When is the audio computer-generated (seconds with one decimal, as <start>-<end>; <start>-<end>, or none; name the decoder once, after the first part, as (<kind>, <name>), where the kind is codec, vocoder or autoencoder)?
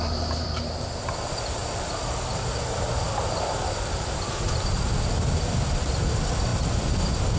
none